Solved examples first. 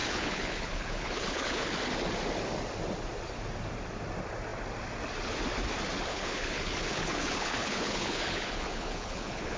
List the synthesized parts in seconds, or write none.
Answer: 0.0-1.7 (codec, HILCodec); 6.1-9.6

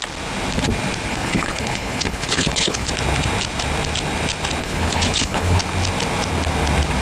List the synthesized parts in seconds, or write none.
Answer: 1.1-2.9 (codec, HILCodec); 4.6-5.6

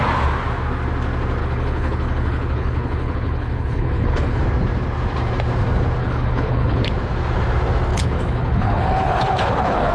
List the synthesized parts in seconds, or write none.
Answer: 1.4-4.4 (codec, HILCodec); 6.0-6.9; 7.9-9.9

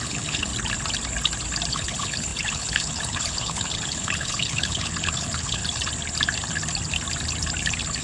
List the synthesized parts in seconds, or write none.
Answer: 0.0-0.5 (codec, HILCodec); 1.7-5.6

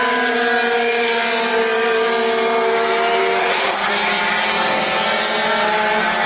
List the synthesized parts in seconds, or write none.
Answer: 3.4-3.9 (codec, HILCodec)

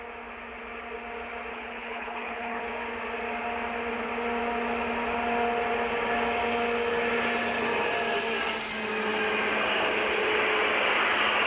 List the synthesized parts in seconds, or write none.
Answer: 1.5-2.6 (codec, HILCodec)

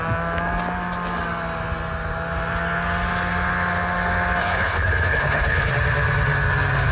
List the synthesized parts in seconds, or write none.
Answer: 4.4-5.7 (codec, HILCodec)